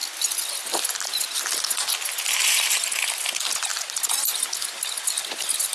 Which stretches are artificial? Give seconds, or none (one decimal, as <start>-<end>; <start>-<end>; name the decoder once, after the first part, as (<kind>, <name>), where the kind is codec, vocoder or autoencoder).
none